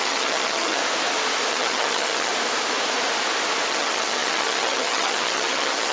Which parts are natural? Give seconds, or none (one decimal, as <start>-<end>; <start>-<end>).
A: 0.8-1.5; 2.3-3.7